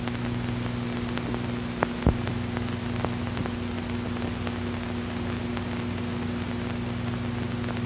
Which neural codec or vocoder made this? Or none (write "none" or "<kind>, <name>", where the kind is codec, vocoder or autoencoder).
none